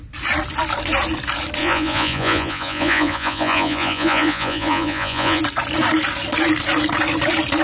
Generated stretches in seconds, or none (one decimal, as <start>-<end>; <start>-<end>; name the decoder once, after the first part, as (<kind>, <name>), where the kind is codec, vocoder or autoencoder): 1.6-5.4 (vocoder, Vocos)